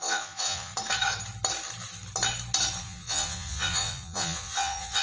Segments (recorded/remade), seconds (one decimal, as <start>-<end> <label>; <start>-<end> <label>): 0.0-0.7 remade; 0.7-2.8 recorded; 2.8-5.0 remade